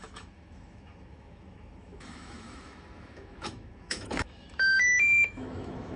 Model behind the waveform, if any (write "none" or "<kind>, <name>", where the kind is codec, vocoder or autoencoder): autoencoder, DAC-VAE